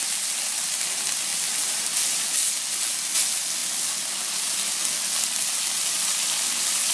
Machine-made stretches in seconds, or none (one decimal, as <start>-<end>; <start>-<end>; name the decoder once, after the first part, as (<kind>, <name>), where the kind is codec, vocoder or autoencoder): none